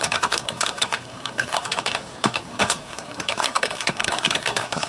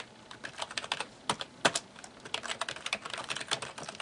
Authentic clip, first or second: second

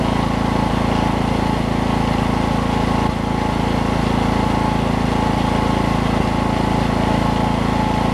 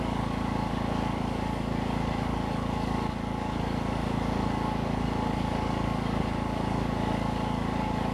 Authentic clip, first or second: first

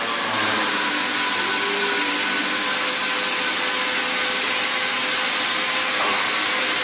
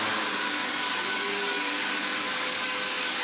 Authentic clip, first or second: first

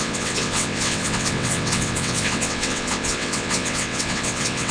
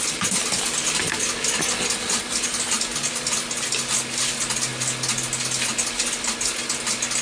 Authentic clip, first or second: second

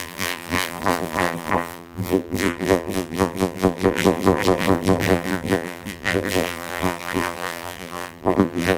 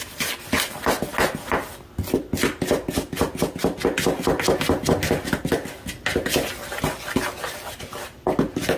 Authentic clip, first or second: second